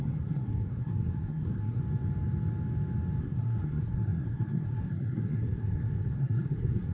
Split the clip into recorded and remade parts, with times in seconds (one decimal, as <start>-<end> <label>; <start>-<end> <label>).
0.0-1.8 remade; 1.8-3.2 recorded; 3.2-6.9 remade